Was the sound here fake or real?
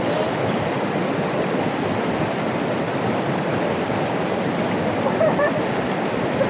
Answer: real